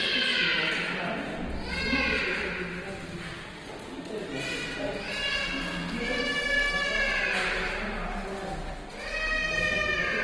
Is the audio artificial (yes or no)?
no